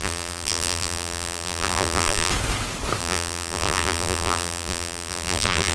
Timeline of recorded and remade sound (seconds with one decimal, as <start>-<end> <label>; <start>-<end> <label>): 0.0-2.3 remade; 2.3-3.0 recorded; 3.0-5.7 remade